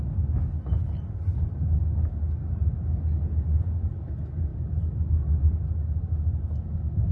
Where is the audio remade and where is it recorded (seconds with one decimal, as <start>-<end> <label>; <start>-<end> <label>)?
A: 0.0-7.1 recorded